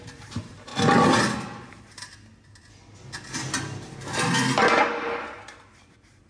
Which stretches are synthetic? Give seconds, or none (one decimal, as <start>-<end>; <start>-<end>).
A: 0.0-0.7; 1.7-2.3; 5.0-6.3